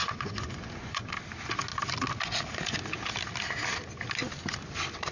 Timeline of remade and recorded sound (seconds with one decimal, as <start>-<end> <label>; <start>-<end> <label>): 0.0-1.1 remade; 1.1-5.1 recorded